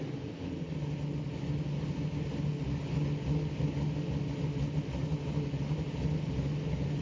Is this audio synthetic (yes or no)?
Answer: no